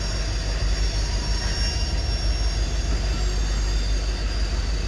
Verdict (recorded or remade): recorded